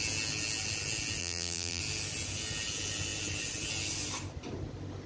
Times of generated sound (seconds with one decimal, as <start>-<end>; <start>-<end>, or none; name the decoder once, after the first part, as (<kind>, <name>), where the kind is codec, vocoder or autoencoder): 1.2-1.8 (vocoder, BigVGAN v2)